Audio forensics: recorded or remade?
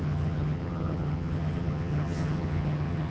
remade